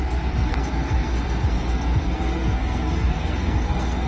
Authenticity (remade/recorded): remade